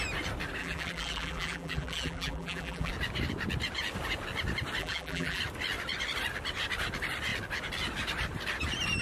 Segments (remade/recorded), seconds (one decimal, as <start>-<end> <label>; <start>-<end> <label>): 0.0-0.6 recorded; 0.6-2.9 remade; 2.9-4.8 recorded; 4.8-5.4 remade; 5.4-9.0 recorded

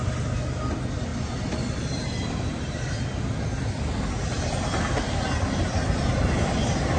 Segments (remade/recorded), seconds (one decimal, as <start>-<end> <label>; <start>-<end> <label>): 0.0-1.1 recorded; 1.1-5.2 remade; 5.2-7.0 recorded

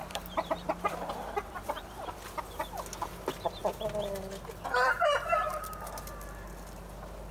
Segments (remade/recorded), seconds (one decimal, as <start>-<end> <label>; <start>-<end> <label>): 0.0-2.4 remade; 2.4-7.3 recorded

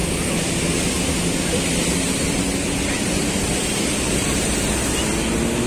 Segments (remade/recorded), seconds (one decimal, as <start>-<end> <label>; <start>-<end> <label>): 0.0-0.5 remade; 0.5-1.1 recorded; 1.1-3.3 remade; 3.3-4.2 recorded; 4.2-4.7 remade; 4.7-5.7 recorded